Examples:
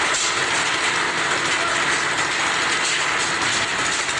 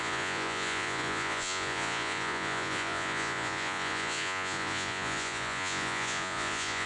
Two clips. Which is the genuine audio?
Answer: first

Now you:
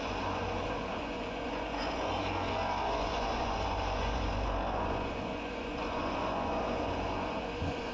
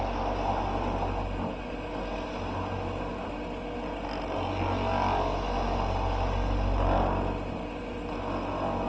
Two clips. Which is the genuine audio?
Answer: second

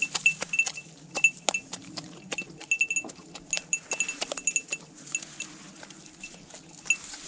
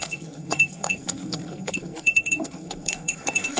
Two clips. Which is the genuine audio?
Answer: first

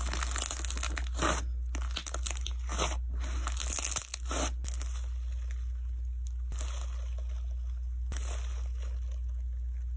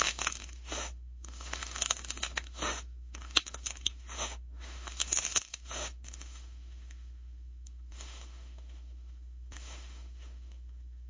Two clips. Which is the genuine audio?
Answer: first